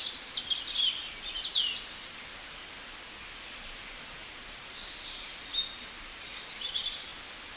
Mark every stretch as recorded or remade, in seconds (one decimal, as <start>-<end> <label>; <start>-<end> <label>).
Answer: 0.0-4.2 recorded; 4.2-5.3 remade; 5.3-7.6 recorded